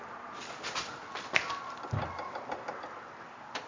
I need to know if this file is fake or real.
fake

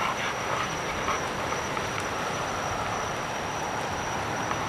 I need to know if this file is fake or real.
fake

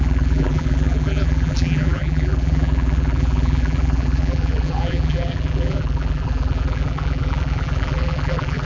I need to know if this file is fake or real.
fake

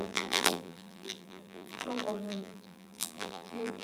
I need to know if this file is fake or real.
fake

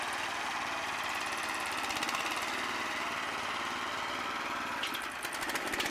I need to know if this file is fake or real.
real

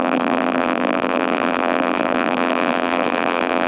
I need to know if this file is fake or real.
fake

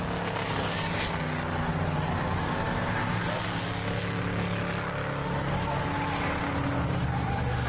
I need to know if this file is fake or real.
real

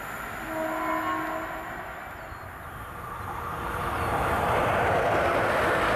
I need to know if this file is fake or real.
real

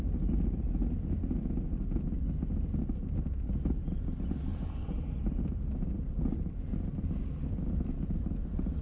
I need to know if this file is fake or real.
real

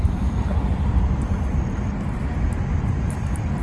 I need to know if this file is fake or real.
fake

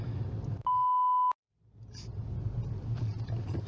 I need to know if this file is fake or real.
real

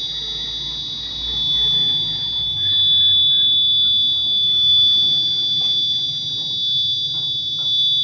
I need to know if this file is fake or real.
real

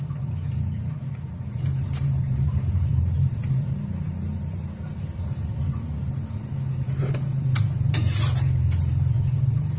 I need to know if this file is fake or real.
fake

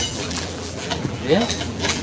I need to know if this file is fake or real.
fake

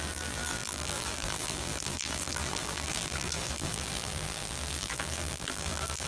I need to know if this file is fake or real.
fake